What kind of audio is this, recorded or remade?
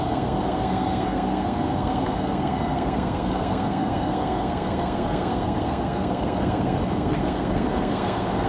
remade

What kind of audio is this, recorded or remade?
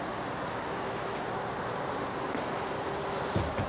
recorded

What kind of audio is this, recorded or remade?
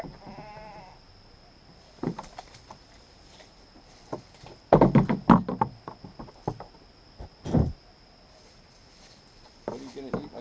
recorded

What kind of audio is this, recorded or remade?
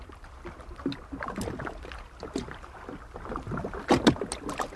recorded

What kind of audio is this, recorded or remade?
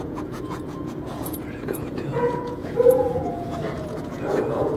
remade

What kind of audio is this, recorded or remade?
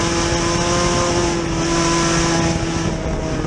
recorded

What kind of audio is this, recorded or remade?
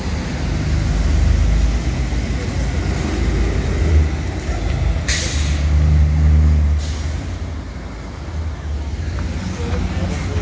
recorded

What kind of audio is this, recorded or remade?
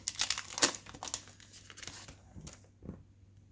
recorded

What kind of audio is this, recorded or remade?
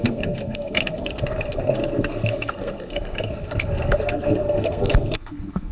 remade